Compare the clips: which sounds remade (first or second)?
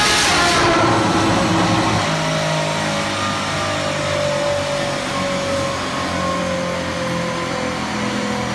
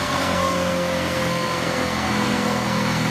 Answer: second